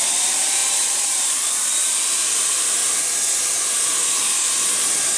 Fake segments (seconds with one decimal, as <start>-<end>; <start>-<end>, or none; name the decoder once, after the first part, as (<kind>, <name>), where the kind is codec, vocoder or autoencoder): 0.0-0.6 (vocoder, BigVGAN v2); 1.2-2.8